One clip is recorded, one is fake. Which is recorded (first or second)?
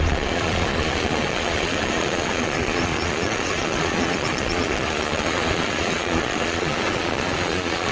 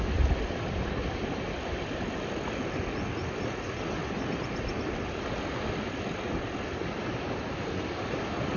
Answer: second